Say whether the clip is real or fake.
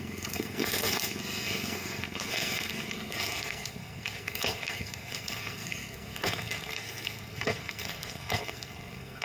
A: fake